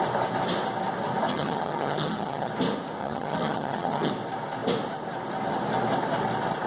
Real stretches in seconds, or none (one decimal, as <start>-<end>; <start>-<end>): 0.0-1.3; 2.5-3.0; 4.1-6.7